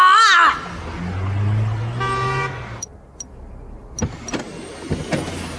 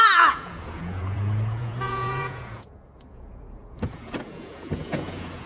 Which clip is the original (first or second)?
first